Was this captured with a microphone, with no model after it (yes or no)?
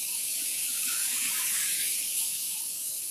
no